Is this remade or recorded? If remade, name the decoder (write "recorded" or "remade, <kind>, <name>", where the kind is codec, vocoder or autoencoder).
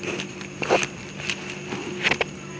recorded